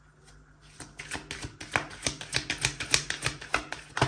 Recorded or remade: recorded